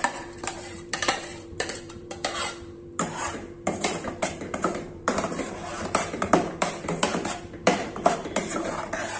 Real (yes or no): no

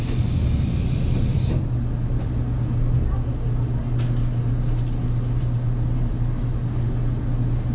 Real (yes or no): yes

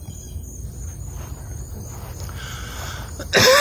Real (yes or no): yes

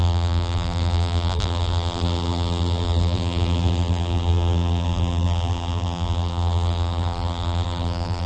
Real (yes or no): no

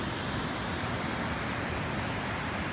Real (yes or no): yes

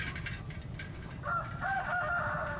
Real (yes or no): no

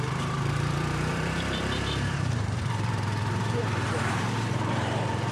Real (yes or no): no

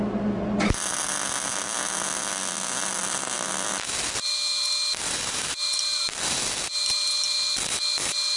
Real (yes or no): yes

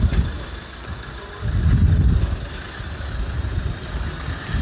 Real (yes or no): yes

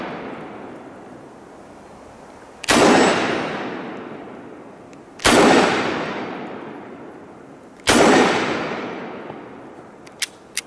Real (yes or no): yes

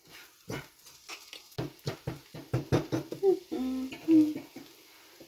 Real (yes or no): yes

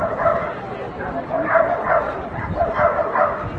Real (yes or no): no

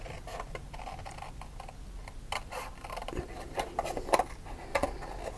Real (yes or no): yes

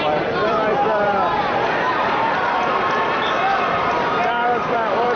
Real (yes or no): no